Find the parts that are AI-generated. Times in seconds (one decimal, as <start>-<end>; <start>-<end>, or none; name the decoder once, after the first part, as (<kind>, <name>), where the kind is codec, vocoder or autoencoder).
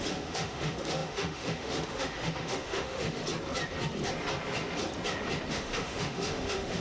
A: 0.0-3.2 (autoencoder, DAC-VAE); 5.5-6.8